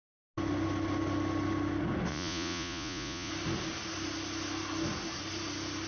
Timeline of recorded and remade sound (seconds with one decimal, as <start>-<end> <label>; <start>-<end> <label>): 0.0-2.1 recorded; 2.1-3.3 remade; 3.3-5.9 recorded